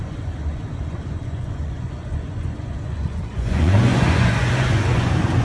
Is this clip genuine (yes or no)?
no